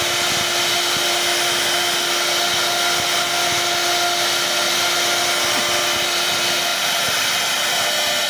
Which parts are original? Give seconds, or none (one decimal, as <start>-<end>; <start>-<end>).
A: 0.0-6.7; 7.5-8.3